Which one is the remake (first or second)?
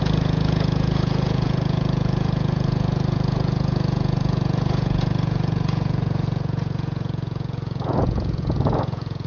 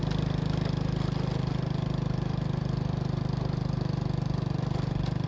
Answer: first